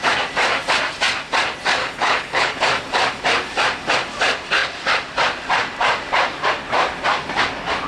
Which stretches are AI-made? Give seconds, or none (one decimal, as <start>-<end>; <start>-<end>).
1.8-2.6